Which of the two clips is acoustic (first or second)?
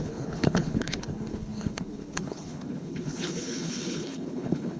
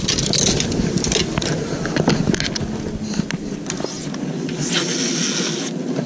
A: second